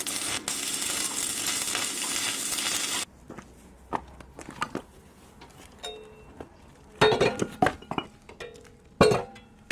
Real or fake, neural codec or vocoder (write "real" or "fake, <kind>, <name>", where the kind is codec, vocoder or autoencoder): real